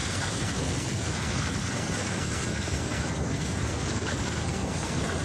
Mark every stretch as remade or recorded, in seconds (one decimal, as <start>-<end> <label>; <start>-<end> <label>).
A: 0.0-5.2 remade